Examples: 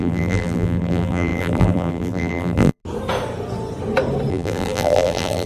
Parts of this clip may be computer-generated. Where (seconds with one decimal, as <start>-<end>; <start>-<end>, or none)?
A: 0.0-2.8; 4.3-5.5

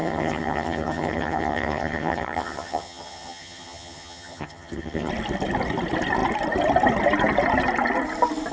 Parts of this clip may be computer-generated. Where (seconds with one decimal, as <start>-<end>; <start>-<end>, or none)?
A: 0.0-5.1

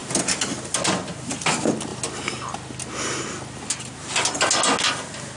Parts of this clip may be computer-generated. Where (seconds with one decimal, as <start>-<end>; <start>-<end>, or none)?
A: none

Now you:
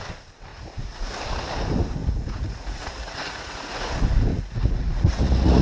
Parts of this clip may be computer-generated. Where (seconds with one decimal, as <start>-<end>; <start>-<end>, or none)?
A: 0.5-1.1; 2.0-3.9; 4.3-5.6

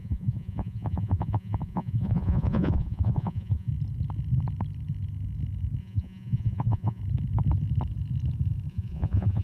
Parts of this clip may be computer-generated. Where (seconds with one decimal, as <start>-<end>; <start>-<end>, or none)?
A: 0.0-3.7; 5.8-7.0; 8.7-9.4